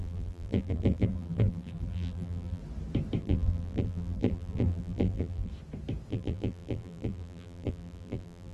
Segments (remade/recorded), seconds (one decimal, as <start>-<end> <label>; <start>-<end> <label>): 0.0-2.6 remade; 2.6-3.2 recorded; 3.2-5.5 remade; 5.5-6.1 recorded; 6.1-8.5 remade